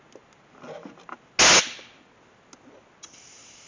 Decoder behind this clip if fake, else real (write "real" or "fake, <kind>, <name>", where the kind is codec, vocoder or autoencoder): real